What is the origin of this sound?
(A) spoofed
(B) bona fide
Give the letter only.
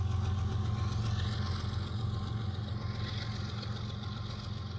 B